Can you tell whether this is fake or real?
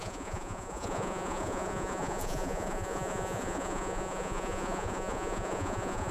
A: fake